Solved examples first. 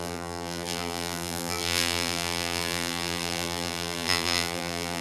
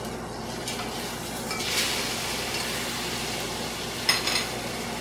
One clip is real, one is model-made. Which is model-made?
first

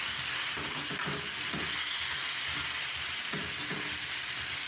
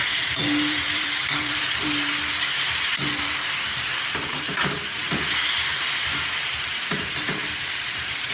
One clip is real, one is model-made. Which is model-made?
second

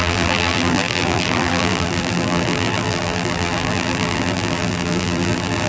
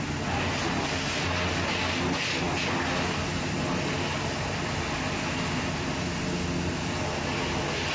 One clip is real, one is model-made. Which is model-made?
first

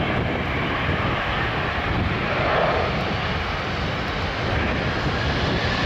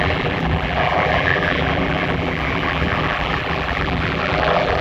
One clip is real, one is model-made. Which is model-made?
second